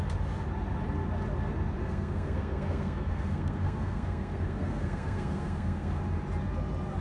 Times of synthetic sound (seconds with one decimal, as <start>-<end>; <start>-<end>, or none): 1.8-6.0